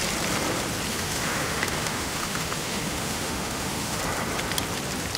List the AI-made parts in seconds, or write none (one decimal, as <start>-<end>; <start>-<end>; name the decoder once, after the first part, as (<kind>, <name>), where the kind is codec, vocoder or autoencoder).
0.9-4.0 (autoencoder, DAC-VAE)